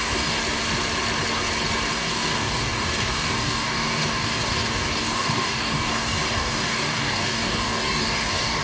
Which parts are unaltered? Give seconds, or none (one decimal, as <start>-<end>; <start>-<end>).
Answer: 0.4-1.9